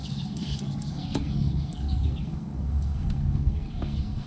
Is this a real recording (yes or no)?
no